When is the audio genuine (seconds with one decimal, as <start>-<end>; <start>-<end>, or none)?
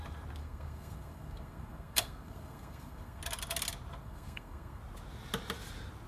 0.0-0.4; 3.2-4.0; 4.8-6.1